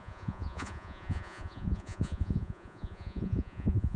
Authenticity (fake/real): fake